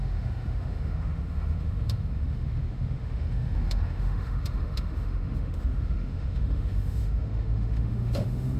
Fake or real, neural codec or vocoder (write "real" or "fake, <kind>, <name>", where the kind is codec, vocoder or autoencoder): fake, autoencoder, DAC-VAE